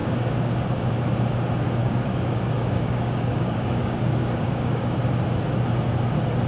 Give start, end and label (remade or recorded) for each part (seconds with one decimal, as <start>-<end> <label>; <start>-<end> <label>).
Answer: 0.0-0.9 remade; 0.9-1.8 recorded; 1.8-4.9 remade; 4.9-6.5 recorded